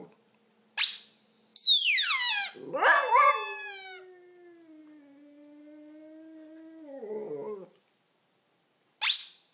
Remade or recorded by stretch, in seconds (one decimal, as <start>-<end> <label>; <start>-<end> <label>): 0.0-9.5 recorded